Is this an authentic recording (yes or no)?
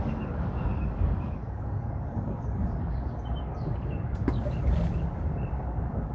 no